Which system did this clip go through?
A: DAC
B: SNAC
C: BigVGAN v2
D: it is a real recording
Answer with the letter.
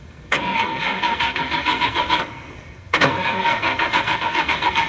B